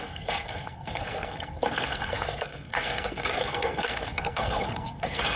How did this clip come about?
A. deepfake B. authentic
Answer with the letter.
A